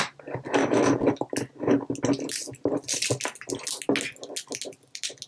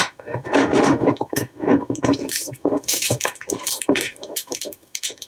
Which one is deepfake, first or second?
second